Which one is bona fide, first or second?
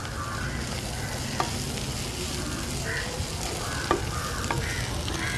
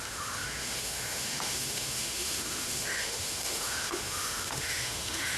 first